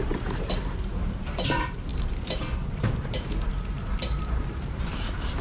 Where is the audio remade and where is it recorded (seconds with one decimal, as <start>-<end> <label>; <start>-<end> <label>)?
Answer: 0.0-5.4 remade